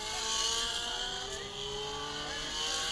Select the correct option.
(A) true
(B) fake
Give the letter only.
A